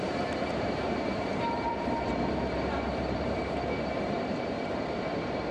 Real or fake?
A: fake